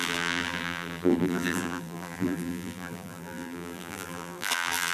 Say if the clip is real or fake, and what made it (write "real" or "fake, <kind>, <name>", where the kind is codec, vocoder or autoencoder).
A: fake, vocoder, BigVGAN v2